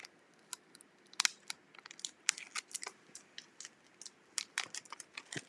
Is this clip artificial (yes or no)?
no